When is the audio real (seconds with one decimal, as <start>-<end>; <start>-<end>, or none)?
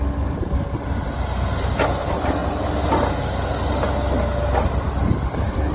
0.0-5.7